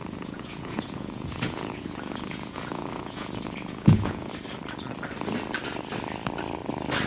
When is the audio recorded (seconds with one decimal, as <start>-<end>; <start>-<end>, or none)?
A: 4.3-7.1